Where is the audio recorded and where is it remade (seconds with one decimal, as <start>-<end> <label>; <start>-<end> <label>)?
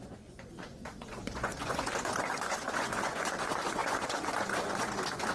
0.0-5.3 remade